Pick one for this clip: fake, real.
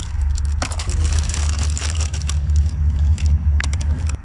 fake